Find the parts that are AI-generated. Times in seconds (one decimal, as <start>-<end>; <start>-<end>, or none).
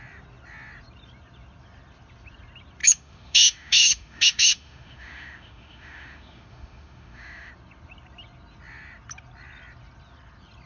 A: 2.8-7.5